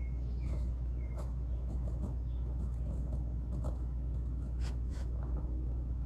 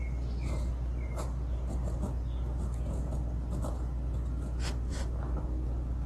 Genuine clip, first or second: second